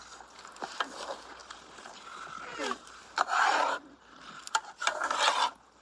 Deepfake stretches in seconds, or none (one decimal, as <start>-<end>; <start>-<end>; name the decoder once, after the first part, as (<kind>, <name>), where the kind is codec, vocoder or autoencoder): 2.5-4.1 (vocoder, BigVGAN v2)